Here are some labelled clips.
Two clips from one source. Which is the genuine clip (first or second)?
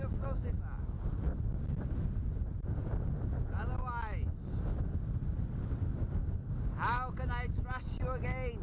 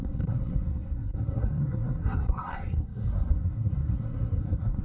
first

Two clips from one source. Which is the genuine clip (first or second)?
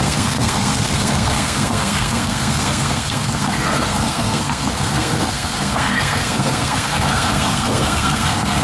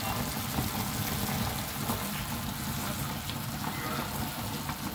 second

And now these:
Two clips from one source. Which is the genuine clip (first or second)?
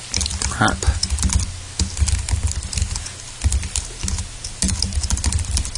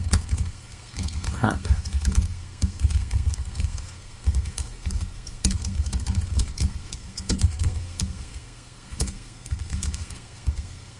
first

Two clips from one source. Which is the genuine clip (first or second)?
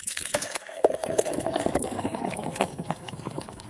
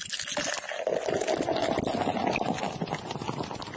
second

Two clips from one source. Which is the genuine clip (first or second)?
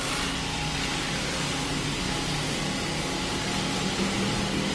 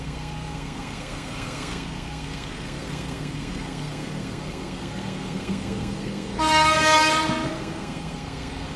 first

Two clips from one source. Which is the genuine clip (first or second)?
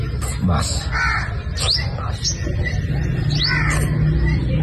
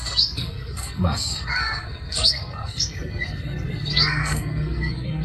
first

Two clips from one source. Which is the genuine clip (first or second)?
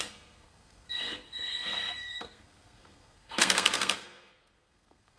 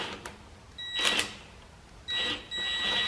second